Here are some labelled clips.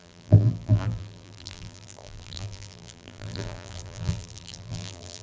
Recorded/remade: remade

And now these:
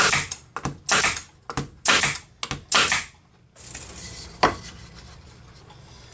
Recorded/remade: recorded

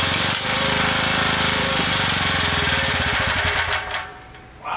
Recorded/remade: remade